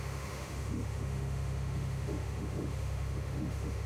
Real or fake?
fake